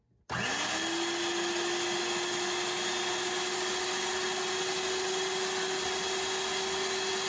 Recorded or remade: recorded